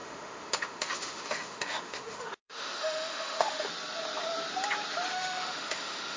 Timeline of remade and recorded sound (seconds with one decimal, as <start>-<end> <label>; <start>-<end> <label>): 0.0-3.7 remade; 3.7-5.1 recorded; 5.1-6.2 remade